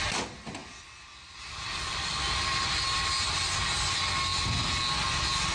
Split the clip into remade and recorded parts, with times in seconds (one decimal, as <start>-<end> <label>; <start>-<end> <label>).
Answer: 0.0-5.5 recorded